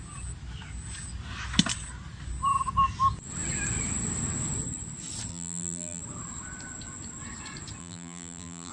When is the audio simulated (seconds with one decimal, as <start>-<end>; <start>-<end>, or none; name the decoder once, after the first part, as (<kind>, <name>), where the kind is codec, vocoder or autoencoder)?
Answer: 5.3-6.0 (vocoder, BigVGAN v2); 7.8-8.7